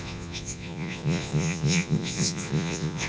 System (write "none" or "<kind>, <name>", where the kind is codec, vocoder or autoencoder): vocoder, Vocos